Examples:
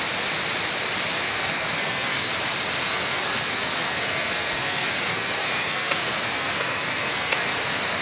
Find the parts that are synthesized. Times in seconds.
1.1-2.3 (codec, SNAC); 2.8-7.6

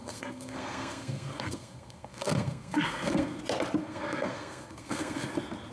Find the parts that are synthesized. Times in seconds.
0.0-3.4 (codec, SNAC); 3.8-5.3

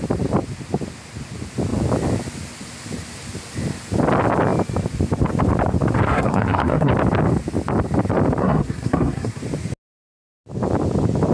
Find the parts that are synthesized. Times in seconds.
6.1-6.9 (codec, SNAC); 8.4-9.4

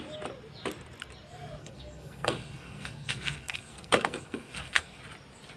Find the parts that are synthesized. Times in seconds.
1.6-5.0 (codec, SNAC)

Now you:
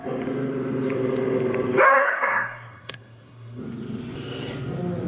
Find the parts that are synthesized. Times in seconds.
1.9-3.6 (codec, SNAC)

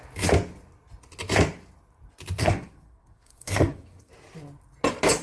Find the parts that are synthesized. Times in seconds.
2.4-4.1 (codec, SNAC)

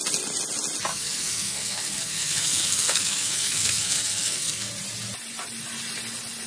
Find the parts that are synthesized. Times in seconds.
0.9-4.7 (codec, SNAC)

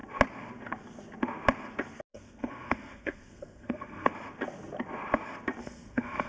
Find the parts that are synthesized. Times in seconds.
2.1-4.1 (codec, SNAC); 5.6-6.3